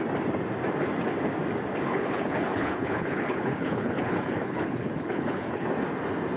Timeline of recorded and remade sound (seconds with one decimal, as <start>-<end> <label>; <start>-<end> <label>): 0.0-1.9 recorded; 1.9-5.7 remade; 5.7-6.4 recorded